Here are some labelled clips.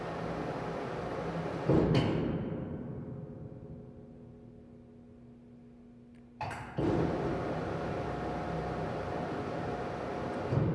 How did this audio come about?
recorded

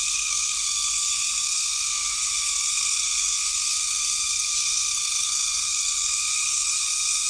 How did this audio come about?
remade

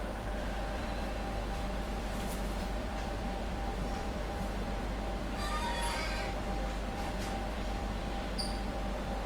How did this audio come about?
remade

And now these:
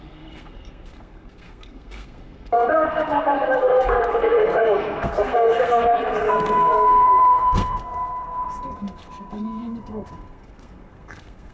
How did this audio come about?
remade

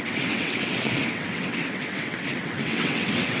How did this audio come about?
remade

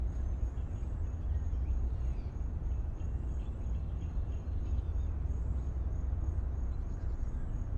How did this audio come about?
recorded